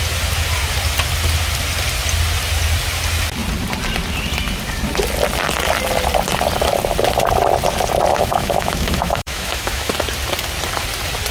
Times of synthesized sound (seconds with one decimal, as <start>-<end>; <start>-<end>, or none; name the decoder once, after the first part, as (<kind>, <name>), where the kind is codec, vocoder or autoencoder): 8.1-9.9 (autoencoder, DAC-VAE)